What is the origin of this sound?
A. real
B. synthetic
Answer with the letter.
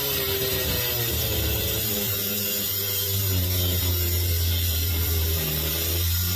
B